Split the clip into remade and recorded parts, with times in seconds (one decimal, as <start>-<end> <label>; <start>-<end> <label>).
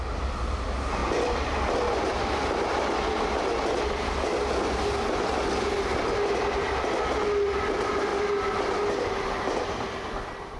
0.0-10.6 recorded